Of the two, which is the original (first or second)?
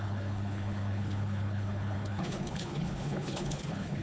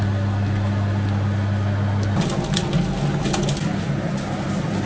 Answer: second